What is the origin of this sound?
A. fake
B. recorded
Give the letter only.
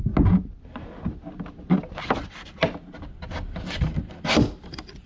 B